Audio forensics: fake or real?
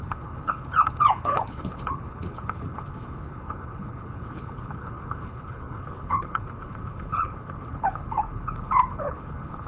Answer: fake